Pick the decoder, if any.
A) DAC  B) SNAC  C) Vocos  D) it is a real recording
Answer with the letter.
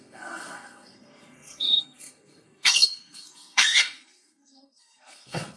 B